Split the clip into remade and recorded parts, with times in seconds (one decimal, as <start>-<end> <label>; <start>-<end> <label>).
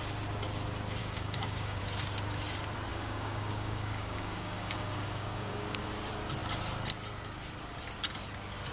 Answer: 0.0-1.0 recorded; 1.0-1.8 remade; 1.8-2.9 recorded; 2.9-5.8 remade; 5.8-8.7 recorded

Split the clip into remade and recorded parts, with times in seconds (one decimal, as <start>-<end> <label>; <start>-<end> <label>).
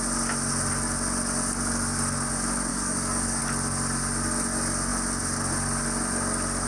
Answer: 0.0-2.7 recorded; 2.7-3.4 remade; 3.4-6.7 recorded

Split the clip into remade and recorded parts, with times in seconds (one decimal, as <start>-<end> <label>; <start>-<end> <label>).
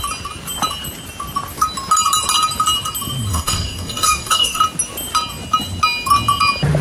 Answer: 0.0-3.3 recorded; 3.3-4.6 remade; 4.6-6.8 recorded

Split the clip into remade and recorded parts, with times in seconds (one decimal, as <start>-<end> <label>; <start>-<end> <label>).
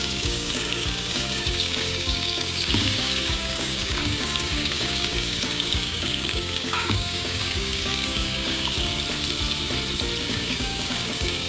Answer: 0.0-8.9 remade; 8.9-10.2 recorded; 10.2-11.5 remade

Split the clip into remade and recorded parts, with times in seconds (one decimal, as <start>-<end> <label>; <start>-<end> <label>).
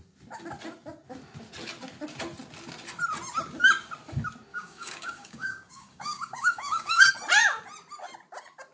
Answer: 0.0-4.5 recorded; 4.5-7.1 remade; 7.1-8.7 recorded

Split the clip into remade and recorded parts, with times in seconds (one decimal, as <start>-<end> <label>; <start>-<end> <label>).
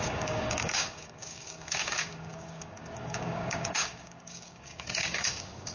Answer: 0.0-5.7 remade